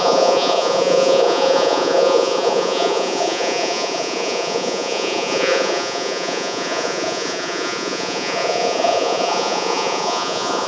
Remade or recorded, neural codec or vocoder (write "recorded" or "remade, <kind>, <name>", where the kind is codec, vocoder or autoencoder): remade, vocoder, Vocos